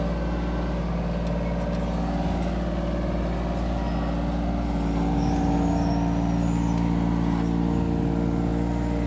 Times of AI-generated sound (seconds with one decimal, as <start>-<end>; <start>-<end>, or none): none